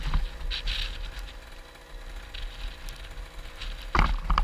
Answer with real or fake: real